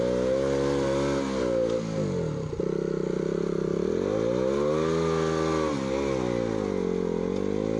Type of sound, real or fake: real